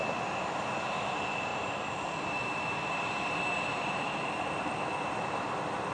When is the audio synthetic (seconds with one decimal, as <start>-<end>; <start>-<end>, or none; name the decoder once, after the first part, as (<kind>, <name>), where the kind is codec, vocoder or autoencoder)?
1.5-5.0 (vocoder, BigVGAN v2)